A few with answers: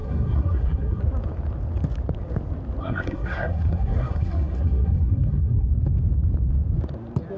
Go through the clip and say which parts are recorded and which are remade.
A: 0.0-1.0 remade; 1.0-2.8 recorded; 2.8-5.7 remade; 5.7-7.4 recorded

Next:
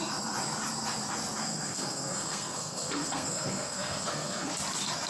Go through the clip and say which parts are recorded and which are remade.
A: 0.0-1.4 recorded; 1.4-4.5 remade; 4.5-5.1 recorded

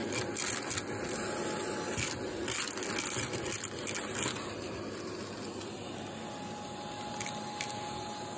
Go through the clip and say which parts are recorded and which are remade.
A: 0.0-8.4 recorded

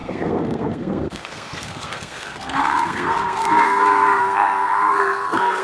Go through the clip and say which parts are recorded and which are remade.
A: 0.0-5.6 remade

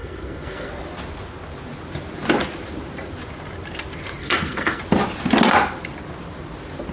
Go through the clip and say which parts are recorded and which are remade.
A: 0.0-0.7 remade; 0.7-4.2 recorded; 4.2-4.8 remade; 4.8-6.9 recorded

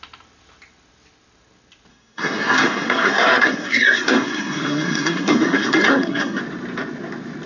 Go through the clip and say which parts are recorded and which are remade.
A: 0.0-1.9 recorded; 1.9-6.4 remade; 6.4-7.5 recorded